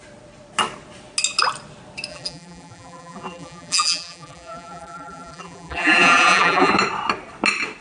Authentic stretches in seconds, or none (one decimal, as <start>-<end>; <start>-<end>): 0.0-2.1; 6.7-7.8